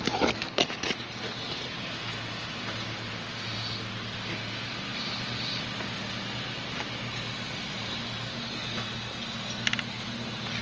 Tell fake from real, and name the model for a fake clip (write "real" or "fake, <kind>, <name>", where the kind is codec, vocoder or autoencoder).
real